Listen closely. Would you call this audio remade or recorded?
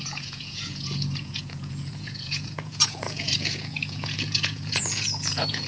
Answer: remade